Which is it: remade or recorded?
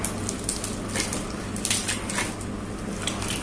recorded